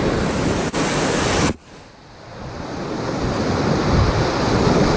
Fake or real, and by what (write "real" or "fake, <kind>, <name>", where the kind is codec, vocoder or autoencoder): real